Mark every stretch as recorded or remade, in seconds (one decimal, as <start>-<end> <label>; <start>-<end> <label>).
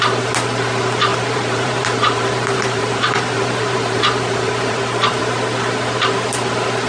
0.0-1.1 recorded; 1.1-5.2 remade; 5.2-6.9 recorded